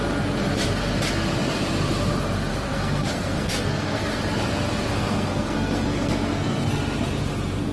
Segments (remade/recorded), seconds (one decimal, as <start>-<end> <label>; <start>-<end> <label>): 0.0-2.5 recorded; 2.5-4.2 remade; 4.2-4.9 recorded; 4.9-6.7 remade; 6.7-7.7 recorded